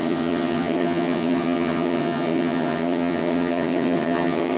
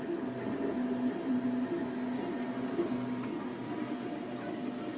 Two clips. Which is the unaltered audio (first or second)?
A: second